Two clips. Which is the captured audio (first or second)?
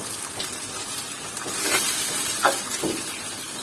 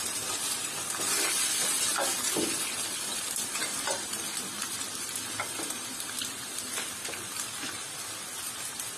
first